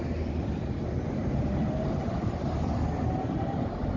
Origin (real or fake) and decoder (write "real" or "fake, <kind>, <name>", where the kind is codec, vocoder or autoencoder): real